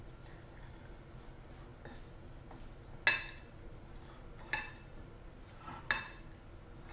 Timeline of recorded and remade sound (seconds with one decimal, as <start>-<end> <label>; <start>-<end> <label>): 0.0-6.9 recorded